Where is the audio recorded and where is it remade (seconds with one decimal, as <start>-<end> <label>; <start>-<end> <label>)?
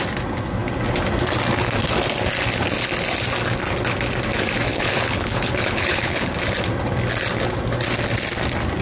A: 0.0-4.7 recorded; 4.7-6.3 remade; 6.3-8.8 recorded